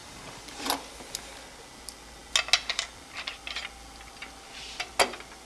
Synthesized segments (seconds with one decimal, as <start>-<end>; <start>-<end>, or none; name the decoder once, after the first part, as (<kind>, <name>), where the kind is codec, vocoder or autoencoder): 0.0-0.7 (vocoder, BigVGAN v2)